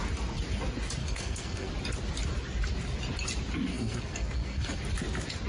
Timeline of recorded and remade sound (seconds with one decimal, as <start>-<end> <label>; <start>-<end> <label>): 0.0-1.0 recorded; 1.0-1.7 remade; 1.7-3.7 recorded; 3.7-4.8 remade; 4.8-5.5 recorded